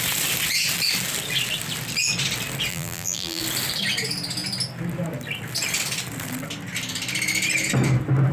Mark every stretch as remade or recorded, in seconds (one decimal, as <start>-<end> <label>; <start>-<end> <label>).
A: 0.0-2.7 recorded; 2.7-3.4 remade; 3.4-8.3 recorded